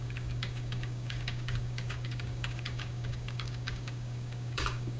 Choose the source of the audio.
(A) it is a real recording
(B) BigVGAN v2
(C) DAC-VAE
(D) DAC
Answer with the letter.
D